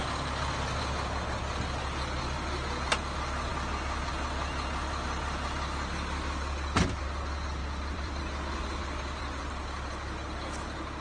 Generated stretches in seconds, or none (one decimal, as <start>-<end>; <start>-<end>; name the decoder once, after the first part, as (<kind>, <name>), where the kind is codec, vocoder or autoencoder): 7.6-8.2 (vocoder, BigVGAN v2); 8.8-9.9